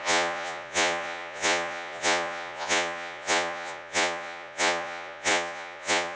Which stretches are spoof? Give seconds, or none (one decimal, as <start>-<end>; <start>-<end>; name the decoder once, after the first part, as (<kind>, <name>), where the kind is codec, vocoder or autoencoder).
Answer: 0.0-6.2 (vocoder, Vocos)